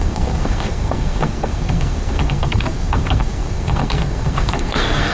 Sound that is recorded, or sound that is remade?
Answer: remade